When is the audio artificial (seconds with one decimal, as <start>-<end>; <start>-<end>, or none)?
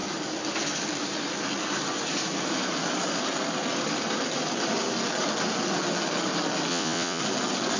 6.7-7.2